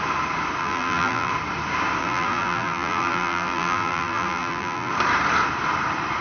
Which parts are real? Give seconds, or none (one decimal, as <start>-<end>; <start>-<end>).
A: 0.0-0.6; 1.3-2.0; 4.9-6.2